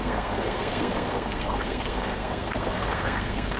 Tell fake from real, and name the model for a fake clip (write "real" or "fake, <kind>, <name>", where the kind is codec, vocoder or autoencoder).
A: fake, codec, SNAC